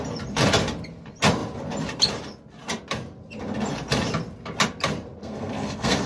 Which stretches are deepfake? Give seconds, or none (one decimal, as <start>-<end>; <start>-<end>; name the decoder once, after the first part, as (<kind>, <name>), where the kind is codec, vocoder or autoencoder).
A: 5.2-6.1 (codec, SNAC)